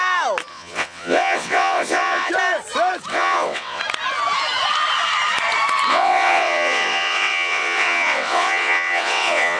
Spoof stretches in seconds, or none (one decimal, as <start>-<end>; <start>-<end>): 0.5-2.3; 3.1-3.8; 5.9-9.6